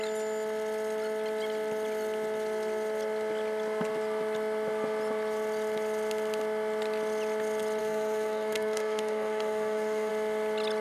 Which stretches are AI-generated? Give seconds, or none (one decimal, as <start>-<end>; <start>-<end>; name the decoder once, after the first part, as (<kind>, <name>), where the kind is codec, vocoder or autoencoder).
7.8-10.1 (codec, SNAC)